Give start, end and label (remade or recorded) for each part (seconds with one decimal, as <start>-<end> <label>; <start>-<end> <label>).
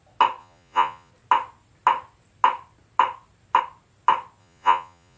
0.0-0.4 recorded; 0.4-1.1 remade; 1.1-4.4 recorded; 4.4-5.2 remade